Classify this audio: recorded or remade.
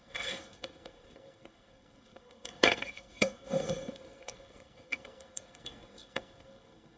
remade